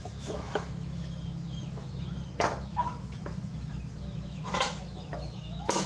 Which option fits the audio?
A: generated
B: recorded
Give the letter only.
A